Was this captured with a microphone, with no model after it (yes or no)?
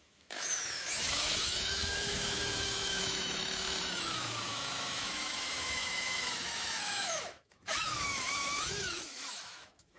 no